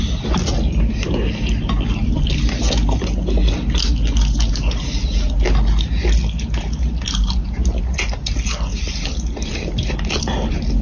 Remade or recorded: recorded